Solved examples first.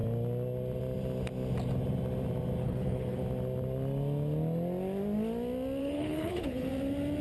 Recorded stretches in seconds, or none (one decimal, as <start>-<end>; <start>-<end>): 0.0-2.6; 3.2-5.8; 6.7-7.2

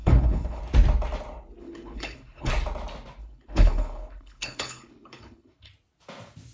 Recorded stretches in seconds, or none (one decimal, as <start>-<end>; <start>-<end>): 0.6-1.6; 2.5-3.2; 5.7-6.5

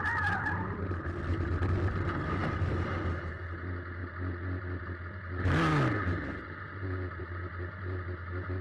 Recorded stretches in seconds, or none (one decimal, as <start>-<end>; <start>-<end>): 0.0-8.6